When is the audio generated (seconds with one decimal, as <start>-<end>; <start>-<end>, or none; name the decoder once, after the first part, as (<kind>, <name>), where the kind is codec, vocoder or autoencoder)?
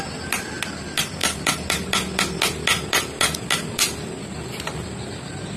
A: none